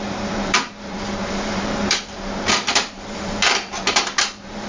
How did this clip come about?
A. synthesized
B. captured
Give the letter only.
A